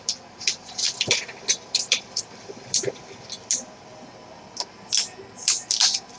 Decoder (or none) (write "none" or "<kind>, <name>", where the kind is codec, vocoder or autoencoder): none